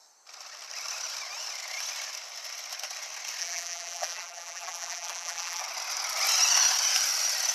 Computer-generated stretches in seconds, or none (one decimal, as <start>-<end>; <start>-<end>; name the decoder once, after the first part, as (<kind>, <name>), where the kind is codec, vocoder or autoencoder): 3.4-5.6 (vocoder, BigVGAN v2)